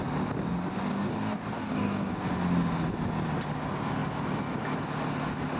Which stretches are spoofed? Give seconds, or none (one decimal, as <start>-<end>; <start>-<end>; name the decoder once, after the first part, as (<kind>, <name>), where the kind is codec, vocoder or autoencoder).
0.9-2.1 (codec, DAC)

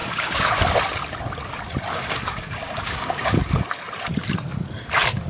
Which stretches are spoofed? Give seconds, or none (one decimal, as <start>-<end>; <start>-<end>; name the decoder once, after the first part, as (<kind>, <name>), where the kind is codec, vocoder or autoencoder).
0.0-0.5 (codec, DAC); 1.9-3.6

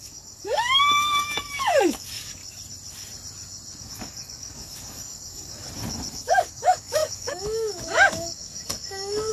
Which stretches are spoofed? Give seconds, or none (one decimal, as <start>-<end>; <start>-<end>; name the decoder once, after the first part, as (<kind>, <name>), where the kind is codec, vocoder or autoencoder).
0.0-2.4 (codec, DAC); 3.8-5.6; 6.1-9.3

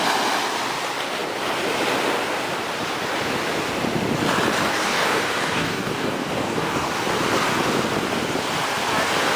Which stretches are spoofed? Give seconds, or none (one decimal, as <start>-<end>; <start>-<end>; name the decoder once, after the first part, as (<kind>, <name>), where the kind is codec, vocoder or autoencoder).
4.7-6.9 (codec, DAC)

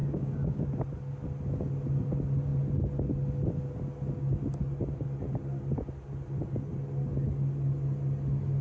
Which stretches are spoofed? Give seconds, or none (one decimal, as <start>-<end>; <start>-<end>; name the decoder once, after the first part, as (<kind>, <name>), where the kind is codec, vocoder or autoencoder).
0.0-0.8 (codec, DAC)